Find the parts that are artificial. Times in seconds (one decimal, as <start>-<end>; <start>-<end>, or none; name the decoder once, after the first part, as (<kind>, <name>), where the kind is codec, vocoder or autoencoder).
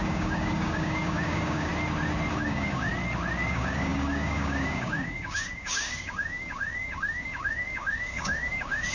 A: 0.0-1.7 (codec, DAC); 2.3-2.9; 3.5-8.9